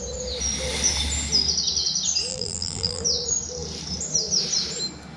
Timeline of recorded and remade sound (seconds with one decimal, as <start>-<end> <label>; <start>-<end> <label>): 0.0-2.3 recorded; 2.3-3.0 remade; 3.0-5.2 recorded